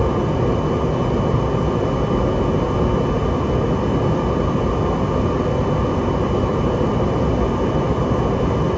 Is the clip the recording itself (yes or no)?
yes